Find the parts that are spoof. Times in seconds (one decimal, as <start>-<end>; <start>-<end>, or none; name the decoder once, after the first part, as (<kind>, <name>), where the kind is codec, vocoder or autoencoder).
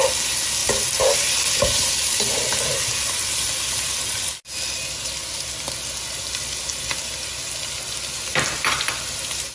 none